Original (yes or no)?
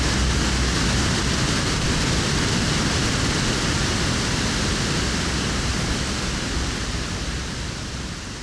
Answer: yes